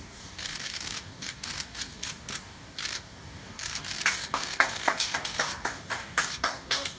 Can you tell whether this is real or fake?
fake